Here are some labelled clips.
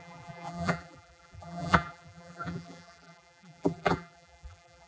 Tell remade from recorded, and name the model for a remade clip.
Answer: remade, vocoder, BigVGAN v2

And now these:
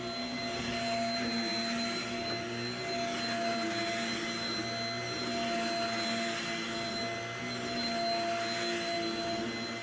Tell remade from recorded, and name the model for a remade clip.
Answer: recorded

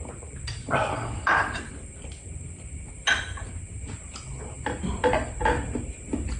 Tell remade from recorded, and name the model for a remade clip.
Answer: recorded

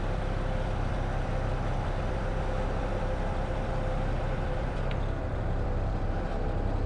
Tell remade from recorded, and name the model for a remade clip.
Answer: remade, vocoder, BigVGAN v2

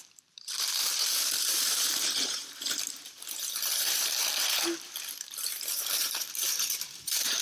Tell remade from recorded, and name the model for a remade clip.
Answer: remade, vocoder, BigVGAN v2